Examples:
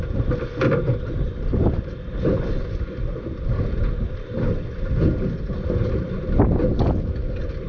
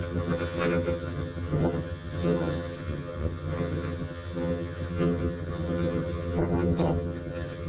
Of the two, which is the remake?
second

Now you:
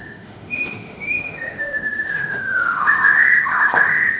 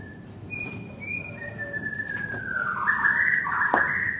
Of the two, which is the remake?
first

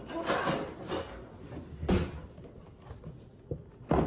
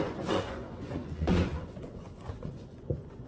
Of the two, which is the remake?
second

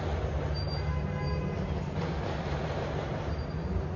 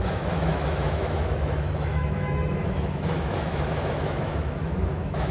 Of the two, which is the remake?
second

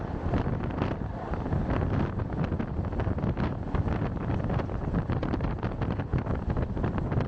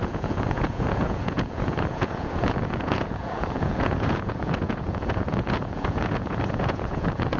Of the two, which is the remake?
second